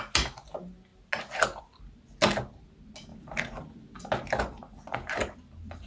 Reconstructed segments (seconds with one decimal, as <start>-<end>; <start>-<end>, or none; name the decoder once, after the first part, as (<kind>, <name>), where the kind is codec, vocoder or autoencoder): none